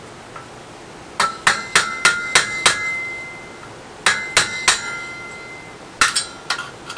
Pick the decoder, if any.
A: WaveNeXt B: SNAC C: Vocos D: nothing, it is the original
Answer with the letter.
D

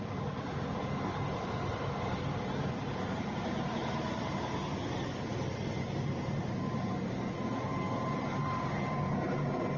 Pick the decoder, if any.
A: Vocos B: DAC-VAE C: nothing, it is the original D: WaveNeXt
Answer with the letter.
C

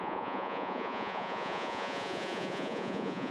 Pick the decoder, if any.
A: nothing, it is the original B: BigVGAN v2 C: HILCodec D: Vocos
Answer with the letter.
D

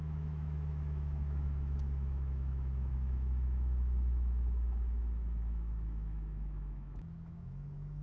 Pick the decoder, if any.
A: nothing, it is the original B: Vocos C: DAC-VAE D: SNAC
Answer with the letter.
C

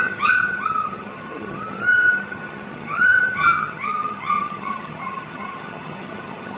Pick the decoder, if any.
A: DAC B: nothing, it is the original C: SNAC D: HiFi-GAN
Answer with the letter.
D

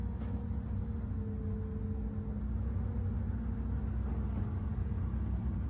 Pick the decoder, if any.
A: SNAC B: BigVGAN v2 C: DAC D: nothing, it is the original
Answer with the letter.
D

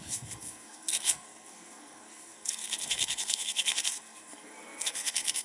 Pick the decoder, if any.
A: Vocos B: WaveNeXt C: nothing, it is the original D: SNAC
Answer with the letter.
D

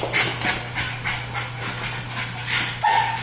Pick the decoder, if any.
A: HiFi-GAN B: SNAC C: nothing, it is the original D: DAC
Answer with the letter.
C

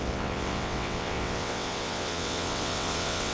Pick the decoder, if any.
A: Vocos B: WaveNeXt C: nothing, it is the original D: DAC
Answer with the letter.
B